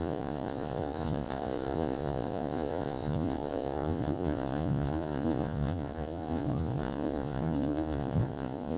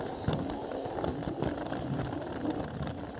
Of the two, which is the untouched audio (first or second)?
second